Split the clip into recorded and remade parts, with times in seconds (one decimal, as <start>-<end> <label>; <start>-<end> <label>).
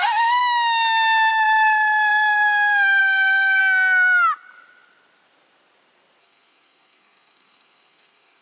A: 0.0-0.4 remade; 0.4-1.3 recorded; 1.3-3.6 remade; 3.6-6.2 recorded; 6.2-8.4 remade